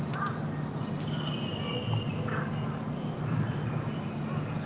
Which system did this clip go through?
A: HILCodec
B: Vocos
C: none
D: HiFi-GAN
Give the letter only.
C